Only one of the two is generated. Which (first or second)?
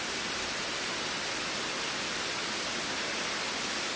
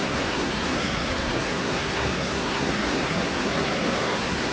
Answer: second